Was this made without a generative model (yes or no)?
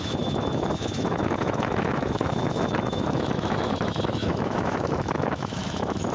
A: no